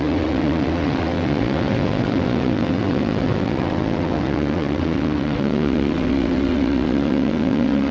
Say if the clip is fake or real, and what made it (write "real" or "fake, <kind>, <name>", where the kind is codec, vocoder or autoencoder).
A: fake, vocoder, WaveNeXt